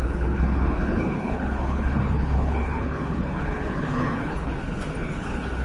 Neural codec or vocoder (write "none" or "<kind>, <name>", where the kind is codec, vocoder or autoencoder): codec, HILCodec